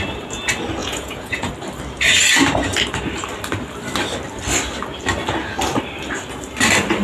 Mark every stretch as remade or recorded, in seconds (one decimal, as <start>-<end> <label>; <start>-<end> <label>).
0.0-0.8 recorded; 0.8-1.5 remade; 1.5-7.0 recorded